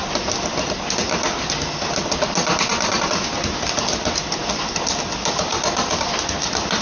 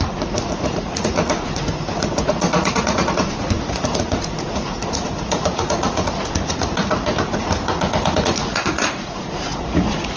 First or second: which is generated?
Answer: second